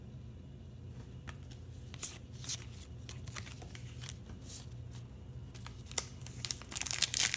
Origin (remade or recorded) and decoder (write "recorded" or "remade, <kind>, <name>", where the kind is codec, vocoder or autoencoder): recorded